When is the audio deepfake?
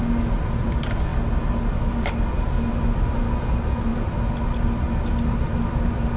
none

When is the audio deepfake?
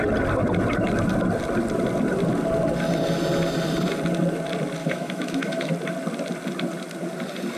4.8-5.7 (autoencoder, DAC-VAE)